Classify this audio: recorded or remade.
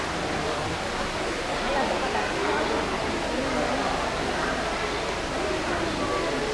recorded